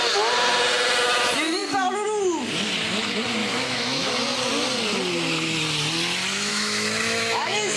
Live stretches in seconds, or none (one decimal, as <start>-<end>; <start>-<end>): 0.0-3.4; 4.1-6.5